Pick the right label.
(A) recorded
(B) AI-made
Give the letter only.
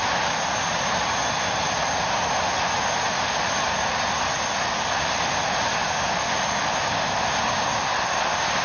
A